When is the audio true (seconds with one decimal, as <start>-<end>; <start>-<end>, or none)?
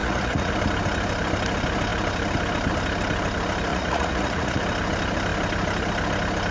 0.5-3.7; 4.6-6.5